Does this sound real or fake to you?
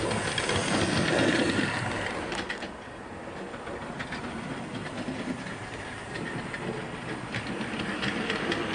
real